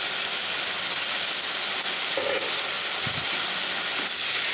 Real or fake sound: real